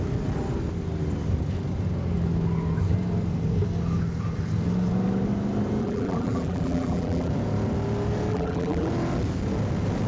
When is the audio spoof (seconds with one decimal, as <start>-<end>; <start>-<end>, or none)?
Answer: 5.8-7.3; 8.3-8.9